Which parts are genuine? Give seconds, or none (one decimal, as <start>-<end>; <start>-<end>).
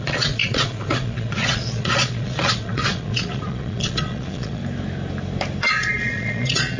4.6-5.7